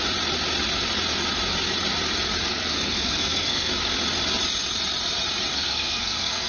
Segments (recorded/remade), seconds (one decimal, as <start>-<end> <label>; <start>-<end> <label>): 0.0-2.5 recorded; 2.5-3.7 remade; 3.7-5.5 recorded; 5.5-6.5 remade